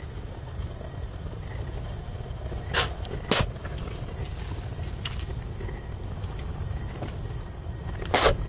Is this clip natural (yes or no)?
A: yes